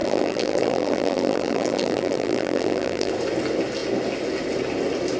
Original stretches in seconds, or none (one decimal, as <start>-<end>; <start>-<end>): 3.1-5.2